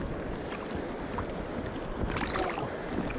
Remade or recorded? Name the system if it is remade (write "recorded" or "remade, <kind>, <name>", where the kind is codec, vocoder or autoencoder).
recorded